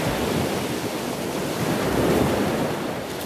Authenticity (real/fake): real